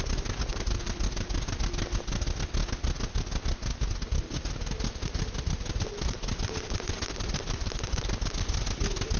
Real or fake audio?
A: real